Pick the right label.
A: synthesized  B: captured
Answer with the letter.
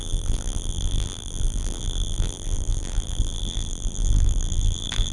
A